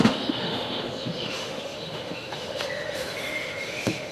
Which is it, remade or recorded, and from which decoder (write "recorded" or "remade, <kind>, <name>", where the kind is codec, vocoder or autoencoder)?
remade, autoencoder, DAC-VAE